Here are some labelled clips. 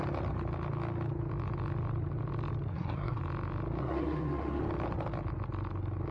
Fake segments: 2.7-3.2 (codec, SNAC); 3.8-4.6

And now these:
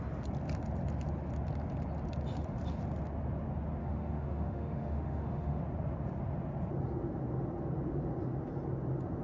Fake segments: 3.8-5.6 (autoencoder, DAC-VAE)